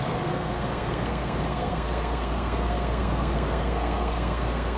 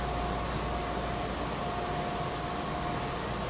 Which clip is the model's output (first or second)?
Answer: first